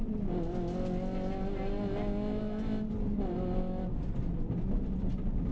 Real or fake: real